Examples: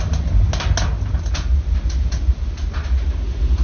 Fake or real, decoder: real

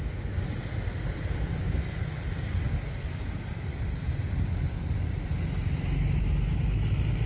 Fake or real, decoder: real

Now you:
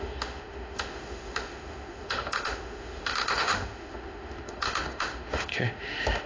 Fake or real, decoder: fake, autoencoder, DAC-VAE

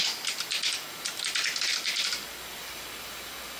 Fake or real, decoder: real